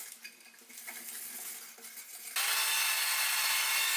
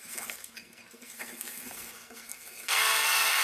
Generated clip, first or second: second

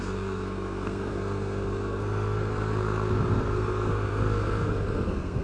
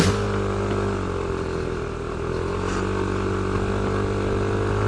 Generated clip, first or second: first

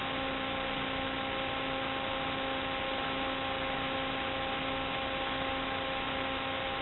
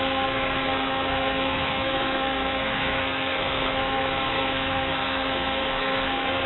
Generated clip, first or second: second